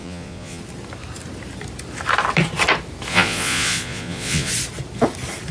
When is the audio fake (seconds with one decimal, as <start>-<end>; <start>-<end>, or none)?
0.0-0.6; 3.1-4.5